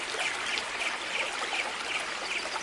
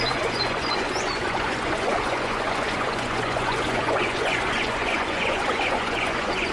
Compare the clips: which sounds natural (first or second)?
first